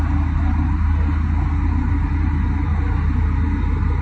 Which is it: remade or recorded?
recorded